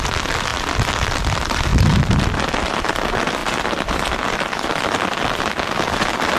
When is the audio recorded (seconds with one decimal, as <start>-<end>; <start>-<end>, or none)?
0.0-1.7; 2.8-6.4